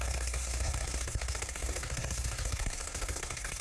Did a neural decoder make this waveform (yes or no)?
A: yes